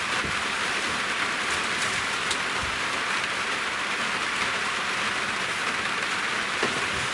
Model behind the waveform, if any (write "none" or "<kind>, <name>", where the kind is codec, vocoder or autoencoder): vocoder, BigVGAN v2